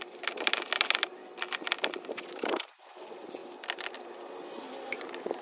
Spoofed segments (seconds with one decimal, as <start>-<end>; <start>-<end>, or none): 0.0-1.2; 2.3-3.4; 4.9-5.4